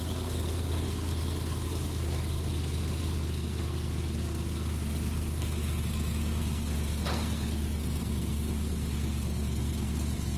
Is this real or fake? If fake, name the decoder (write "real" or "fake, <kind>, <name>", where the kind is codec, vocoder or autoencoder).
fake, codec, SNAC